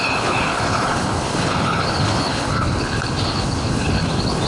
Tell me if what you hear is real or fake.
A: fake